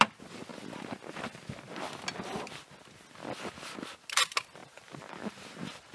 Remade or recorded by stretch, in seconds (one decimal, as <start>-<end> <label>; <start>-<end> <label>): 0.0-4.6 recorded; 4.6-5.9 remade